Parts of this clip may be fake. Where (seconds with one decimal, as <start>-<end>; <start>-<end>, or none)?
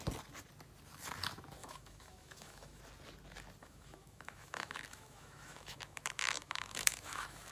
1.6-2.8; 3.6-7.5